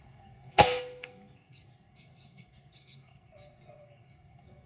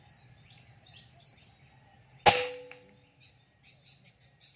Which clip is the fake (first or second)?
first